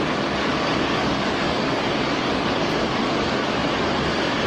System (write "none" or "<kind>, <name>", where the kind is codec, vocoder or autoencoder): codec, DAC